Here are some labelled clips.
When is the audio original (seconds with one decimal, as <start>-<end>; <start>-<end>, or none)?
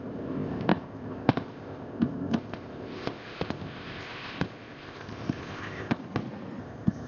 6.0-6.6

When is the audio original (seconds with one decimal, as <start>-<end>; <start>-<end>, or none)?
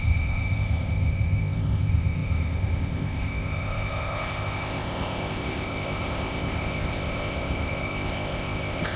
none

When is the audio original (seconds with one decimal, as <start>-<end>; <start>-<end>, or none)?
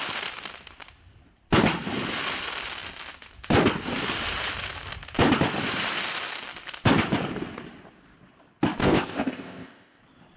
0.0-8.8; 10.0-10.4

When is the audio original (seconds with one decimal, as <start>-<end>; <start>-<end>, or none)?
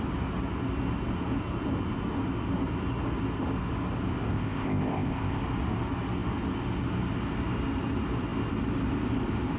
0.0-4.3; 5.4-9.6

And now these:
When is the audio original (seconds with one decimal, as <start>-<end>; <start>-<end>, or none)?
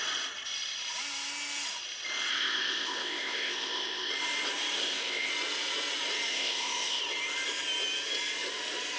0.0-2.3; 4.1-4.8; 5.3-6.3; 7.0-9.0